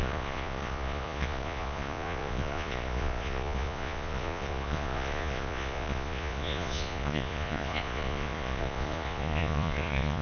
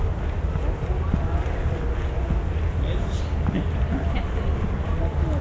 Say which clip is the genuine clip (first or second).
second